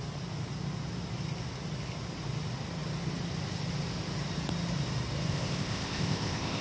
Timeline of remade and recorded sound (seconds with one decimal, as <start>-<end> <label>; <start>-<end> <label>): 0.0-5.3 recorded; 5.3-6.6 remade